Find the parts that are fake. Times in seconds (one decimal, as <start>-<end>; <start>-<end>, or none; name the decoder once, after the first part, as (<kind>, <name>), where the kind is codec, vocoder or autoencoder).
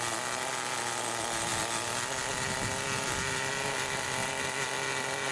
none